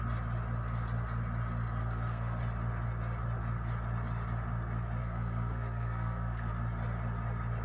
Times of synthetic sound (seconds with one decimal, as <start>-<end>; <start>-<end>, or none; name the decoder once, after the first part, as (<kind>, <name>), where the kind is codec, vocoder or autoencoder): 1.8-2.4 (codec, SNAC); 5.0-6.5